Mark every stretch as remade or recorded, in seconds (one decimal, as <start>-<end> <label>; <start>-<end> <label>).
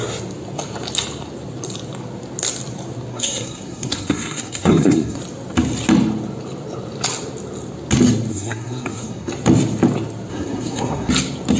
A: 0.0-3.1 recorded; 3.1-5.2 remade; 5.2-8.3 recorded; 8.3-9.3 remade; 9.3-10.3 recorded; 10.3-11.1 remade; 11.1-11.6 recorded